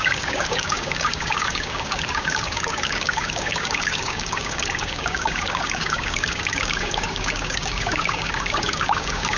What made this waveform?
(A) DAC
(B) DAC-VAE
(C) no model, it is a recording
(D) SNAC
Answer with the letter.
A